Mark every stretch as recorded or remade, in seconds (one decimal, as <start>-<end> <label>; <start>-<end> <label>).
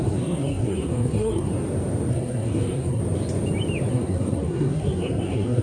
0.0-1.5 remade; 1.5-2.1 recorded; 2.1-3.0 remade; 3.0-3.9 recorded; 3.9-5.6 remade